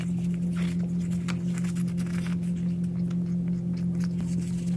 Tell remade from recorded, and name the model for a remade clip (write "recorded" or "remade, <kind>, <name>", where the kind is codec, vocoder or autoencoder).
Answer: recorded